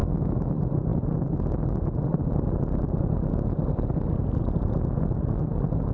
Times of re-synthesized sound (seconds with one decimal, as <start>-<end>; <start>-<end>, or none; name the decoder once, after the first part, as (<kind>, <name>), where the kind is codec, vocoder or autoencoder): 0.0-0.5 (autoencoder, DAC-VAE)

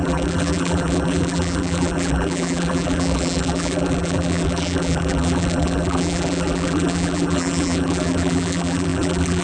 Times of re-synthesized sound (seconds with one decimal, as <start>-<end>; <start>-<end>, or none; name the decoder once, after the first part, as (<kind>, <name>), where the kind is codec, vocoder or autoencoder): 0.0-9.4 (vocoder, BigVGAN v2)

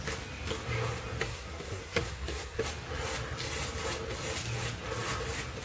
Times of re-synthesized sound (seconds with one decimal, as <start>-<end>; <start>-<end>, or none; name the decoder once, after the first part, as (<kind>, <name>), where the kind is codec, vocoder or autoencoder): 1.3-2.6 (codec, SNAC)

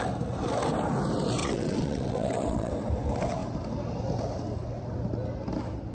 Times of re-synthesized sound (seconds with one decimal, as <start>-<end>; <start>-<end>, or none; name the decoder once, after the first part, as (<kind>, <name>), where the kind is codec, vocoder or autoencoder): 1.4-2.7 (vocoder, WaveNeXt)

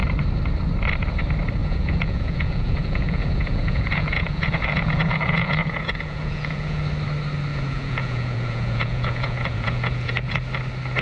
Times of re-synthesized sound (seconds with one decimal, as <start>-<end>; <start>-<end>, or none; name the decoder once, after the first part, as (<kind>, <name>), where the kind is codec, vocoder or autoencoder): 1.6-6.8 (vocoder, Vocos); 7.5-10.3

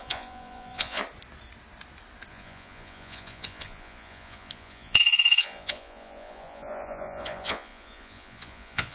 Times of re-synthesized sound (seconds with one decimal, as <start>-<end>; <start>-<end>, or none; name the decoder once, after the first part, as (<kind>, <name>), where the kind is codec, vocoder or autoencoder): 0.0-1.0 (vocoder, Vocos); 2.3-8.9

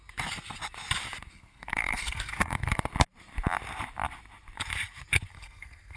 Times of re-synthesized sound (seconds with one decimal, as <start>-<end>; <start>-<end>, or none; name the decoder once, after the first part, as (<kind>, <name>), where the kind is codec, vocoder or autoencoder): 1.3-2.9 (codec, SNAC); 5.3-6.0